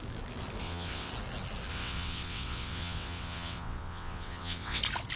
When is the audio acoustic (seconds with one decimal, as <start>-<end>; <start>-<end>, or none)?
0.0-0.6; 1.1-1.7; 4.8-5.2